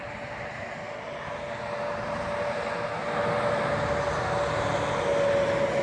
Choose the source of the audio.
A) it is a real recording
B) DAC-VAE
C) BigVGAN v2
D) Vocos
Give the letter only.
A